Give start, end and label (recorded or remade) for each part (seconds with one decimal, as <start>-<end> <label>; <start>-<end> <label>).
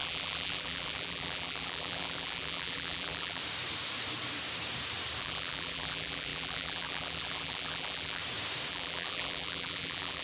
0.0-3.4 remade; 3.4-5.2 recorded; 5.2-8.2 remade; 8.2-8.7 recorded; 8.7-10.2 remade